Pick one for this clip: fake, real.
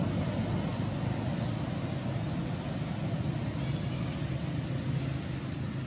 real